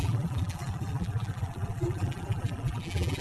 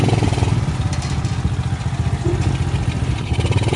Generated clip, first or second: first